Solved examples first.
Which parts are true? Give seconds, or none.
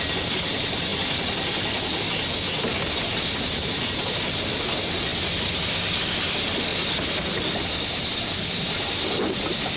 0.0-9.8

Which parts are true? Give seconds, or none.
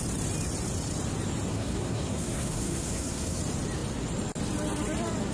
0.0-1.5; 3.4-5.3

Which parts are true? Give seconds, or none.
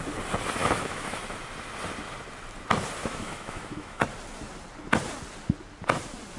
0.0-0.6; 1.2-3.0; 4.0-6.4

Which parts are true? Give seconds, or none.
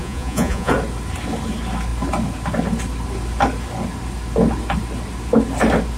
0.7-6.0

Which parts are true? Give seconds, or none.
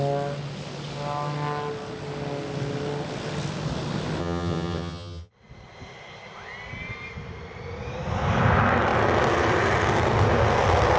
0.0-4.2; 5.3-11.0